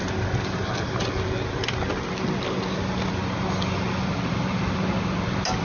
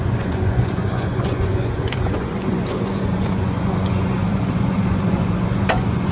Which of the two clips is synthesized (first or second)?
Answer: second